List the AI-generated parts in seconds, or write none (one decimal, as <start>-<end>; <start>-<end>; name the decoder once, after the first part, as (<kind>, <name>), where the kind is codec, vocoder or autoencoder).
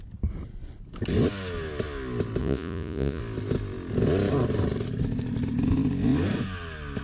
2.4-3.2 (vocoder, Vocos)